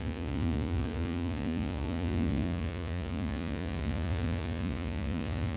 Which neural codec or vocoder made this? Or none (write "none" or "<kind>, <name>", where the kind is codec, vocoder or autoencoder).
vocoder, Vocos